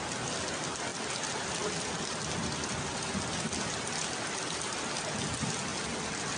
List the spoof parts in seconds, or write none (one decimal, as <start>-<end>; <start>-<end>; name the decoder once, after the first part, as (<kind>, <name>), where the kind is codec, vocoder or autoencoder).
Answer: none